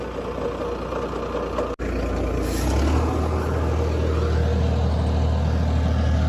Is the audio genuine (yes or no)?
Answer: yes